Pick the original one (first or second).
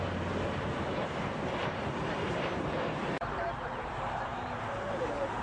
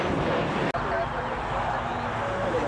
second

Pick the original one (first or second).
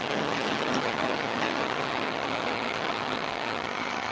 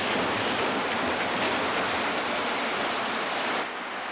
second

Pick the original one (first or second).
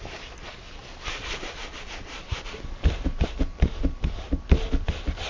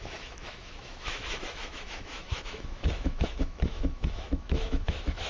first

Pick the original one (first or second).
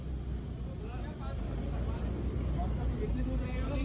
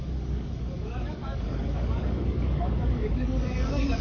first